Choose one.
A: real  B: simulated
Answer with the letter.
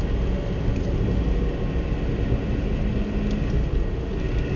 A